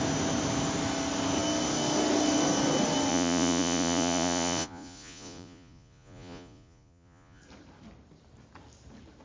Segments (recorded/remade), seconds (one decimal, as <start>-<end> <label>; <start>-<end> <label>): 0.0-3.1 recorded; 3.1-7.4 remade; 7.4-9.2 recorded